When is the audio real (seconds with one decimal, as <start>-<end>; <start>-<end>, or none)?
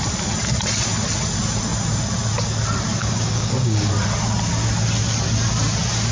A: 0.0-3.0; 3.9-6.1